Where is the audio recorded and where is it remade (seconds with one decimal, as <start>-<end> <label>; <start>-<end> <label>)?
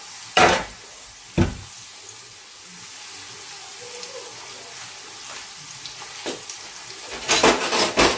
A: 0.0-8.2 recorded